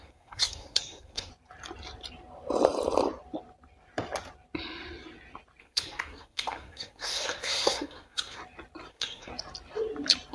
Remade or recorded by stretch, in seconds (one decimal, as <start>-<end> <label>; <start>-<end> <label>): 0.0-1.3 remade; 1.3-5.6 recorded; 5.6-8.4 remade; 8.4-8.9 recorded; 8.9-9.3 remade; 9.3-10.3 recorded